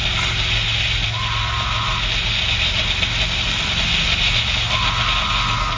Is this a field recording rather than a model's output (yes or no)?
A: yes